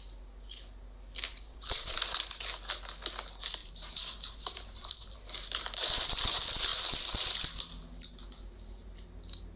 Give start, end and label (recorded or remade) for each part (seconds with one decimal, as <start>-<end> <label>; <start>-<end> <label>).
0.0-1.3 recorded; 1.3-2.4 remade; 2.4-3.6 recorded; 3.6-5.9 remade; 5.9-9.6 recorded